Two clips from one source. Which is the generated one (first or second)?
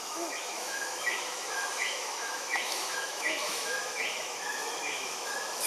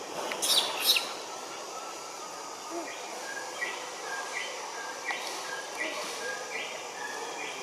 first